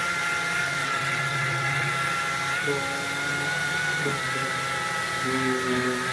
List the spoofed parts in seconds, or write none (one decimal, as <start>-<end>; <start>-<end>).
0.8-1.9